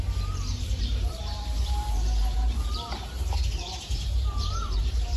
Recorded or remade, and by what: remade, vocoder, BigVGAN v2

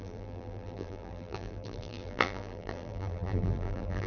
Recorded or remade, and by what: remade, vocoder, BigVGAN v2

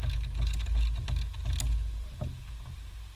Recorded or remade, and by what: recorded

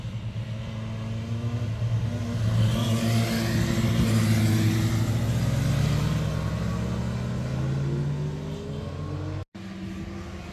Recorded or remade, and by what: recorded